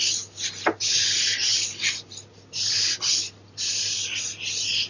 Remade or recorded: recorded